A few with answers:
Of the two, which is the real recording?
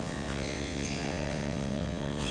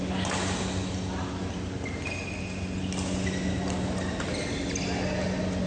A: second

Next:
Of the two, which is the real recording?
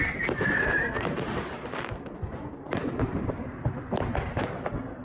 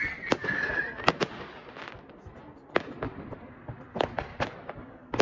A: second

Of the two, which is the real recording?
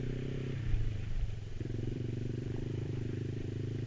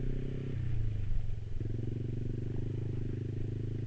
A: second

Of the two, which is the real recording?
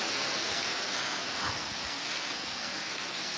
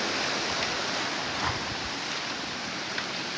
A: second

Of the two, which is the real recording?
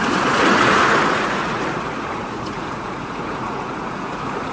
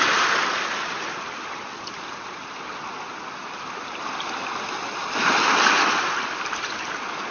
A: second